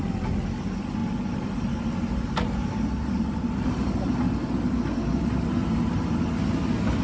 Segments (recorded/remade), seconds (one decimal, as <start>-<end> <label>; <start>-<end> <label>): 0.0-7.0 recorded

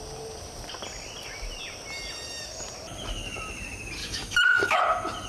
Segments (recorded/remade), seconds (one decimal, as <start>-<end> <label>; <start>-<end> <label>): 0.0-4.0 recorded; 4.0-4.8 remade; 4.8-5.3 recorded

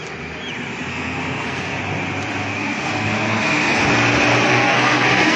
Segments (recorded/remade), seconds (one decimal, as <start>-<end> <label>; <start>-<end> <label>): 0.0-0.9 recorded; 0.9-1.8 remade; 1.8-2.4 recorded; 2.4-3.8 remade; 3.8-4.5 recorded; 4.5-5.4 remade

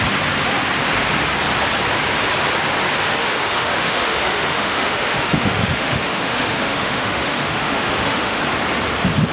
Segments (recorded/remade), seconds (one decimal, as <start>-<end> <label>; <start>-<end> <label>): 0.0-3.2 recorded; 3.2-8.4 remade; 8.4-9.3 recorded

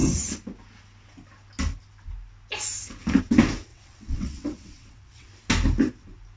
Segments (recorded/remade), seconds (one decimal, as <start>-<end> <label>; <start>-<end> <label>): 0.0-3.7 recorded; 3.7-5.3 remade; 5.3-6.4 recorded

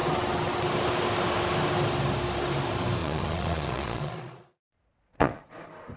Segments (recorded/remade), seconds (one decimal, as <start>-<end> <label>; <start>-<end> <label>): 0.0-3.0 recorded; 3.0-5.5 remade; 5.5-6.0 recorded

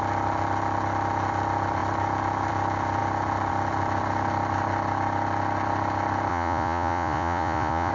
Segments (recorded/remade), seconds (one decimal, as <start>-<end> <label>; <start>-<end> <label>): 0.0-6.3 recorded; 6.3-7.9 remade

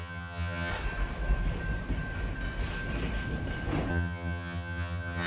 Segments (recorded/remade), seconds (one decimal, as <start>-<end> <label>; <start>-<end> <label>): 0.0-0.7 remade; 0.7-3.9 recorded; 3.9-5.3 remade